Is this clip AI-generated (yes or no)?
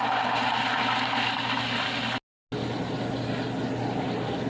no